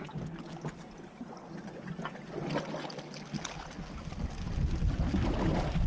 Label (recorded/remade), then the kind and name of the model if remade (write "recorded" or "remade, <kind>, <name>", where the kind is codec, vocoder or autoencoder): recorded